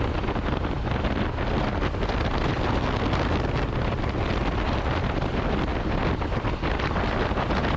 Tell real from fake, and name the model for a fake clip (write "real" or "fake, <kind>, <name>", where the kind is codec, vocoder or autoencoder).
real